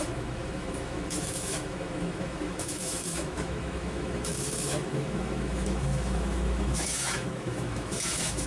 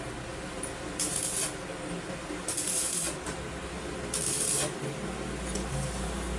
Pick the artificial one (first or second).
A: first